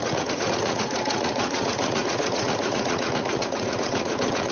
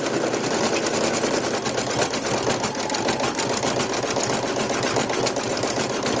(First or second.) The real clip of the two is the second